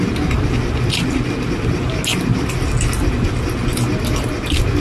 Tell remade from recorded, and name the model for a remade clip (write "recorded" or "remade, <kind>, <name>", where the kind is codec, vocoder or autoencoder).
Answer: recorded